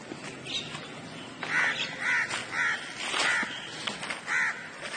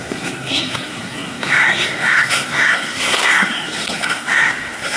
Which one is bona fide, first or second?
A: first